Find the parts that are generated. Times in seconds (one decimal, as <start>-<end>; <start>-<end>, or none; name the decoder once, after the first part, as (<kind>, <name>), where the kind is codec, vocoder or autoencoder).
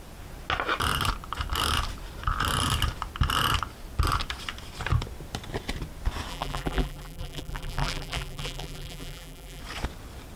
6.3-9.6 (vocoder, BigVGAN v2)